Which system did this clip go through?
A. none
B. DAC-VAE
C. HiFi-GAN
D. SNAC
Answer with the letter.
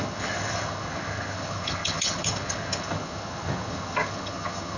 C